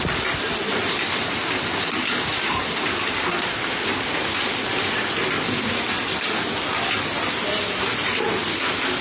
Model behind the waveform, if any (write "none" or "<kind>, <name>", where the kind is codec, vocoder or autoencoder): none